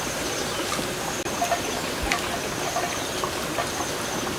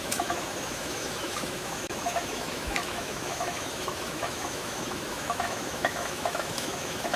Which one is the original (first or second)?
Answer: first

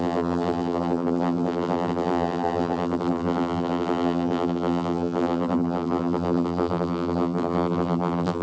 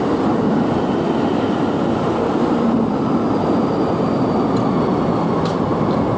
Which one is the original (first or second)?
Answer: second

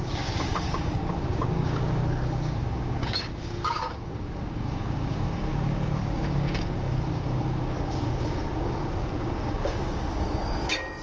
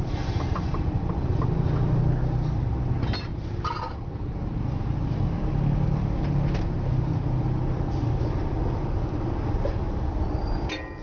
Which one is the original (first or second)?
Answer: second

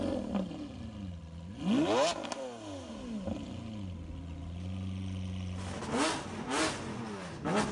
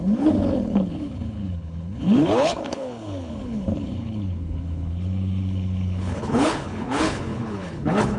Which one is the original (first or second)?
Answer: first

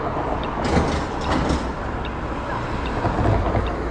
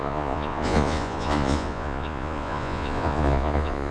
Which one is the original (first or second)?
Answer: first